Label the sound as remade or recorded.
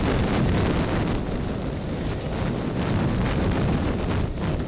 recorded